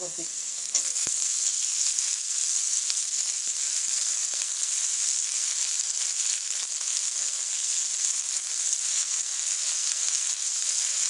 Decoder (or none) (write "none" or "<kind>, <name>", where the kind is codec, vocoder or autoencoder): codec, SNAC